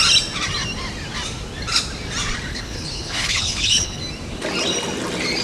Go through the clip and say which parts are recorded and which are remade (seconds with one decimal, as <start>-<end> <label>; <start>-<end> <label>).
0.0-2.5 recorded; 2.5-4.0 remade; 4.0-5.4 recorded